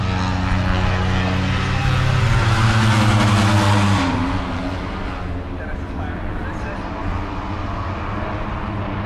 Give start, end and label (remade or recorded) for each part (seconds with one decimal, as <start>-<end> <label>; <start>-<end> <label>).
0.0-9.1 recorded